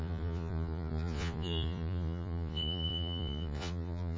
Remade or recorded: remade